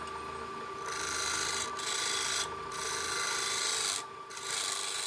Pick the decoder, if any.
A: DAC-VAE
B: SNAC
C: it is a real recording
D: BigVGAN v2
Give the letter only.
C